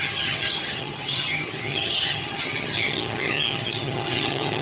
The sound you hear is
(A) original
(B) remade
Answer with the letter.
B